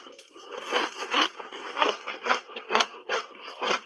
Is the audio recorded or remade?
remade